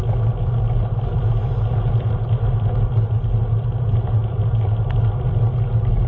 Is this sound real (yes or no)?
yes